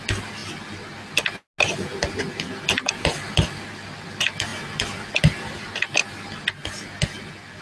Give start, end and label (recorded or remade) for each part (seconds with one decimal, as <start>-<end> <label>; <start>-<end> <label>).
0.0-7.6 recorded